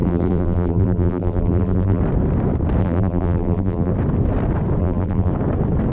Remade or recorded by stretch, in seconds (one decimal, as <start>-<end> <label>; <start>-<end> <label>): 0.0-2.0 remade; 2.0-2.8 recorded; 2.8-3.9 remade; 3.9-4.8 recorded; 4.8-5.3 remade; 5.3-5.9 recorded